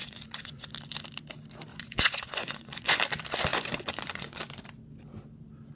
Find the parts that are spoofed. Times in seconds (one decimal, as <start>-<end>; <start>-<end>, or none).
0.0-0.7; 1.7-3.0; 3.5-4.4